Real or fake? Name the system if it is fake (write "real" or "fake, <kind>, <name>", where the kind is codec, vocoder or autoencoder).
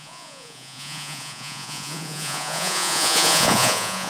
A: fake, vocoder, Vocos